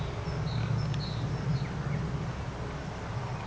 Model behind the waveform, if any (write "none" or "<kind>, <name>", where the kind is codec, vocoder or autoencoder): none